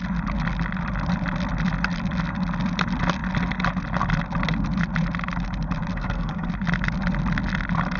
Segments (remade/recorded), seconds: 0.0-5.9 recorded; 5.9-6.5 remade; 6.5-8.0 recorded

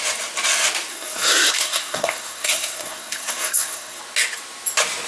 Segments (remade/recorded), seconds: 0.0-0.9 recorded; 0.9-4.0 remade; 4.0-5.1 recorded

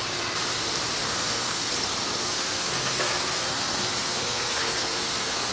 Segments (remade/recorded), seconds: 0.0-1.0 recorded; 1.0-1.7 remade; 1.7-2.2 recorded; 2.2-5.5 remade

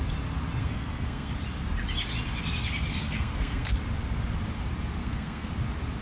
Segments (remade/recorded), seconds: 0.0-0.6 recorded; 0.6-1.3 remade; 1.3-2.9 recorded; 2.9-3.7 remade; 3.7-5.0 recorded; 5.0-5.5 remade; 5.5-6.0 recorded

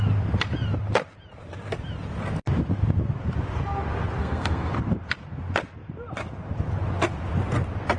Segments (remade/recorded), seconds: 0.0-4.2 recorded; 4.2-4.7 remade; 4.7-8.0 recorded

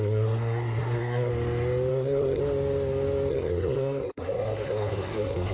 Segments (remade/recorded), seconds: 0.0-1.3 remade; 1.3-1.9 recorded; 1.9-2.4 remade; 2.4-3.3 recorded; 3.3-5.5 remade